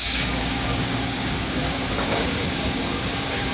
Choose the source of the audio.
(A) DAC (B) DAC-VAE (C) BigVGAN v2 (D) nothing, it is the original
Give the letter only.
A